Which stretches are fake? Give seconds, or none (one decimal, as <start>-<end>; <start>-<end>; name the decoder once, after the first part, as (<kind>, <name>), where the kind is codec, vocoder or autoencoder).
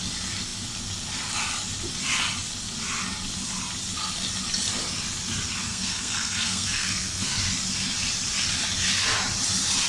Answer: 5.7-7.4 (codec, SNAC)